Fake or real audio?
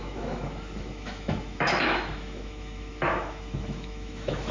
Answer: fake